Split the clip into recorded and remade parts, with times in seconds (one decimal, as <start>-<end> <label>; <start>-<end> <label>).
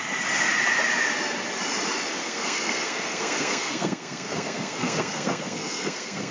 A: 0.0-2.2 recorded; 2.2-6.3 remade